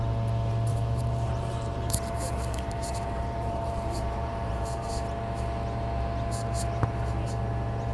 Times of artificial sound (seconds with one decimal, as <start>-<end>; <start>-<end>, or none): 0.7-4.9